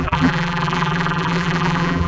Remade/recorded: remade